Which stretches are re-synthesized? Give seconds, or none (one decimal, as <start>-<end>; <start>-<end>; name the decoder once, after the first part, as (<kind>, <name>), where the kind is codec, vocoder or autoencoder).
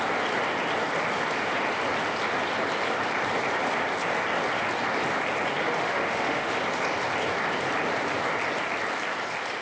5.8-6.6 (autoencoder, DAC-VAE)